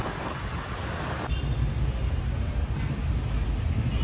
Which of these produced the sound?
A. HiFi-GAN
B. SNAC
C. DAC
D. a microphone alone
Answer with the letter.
D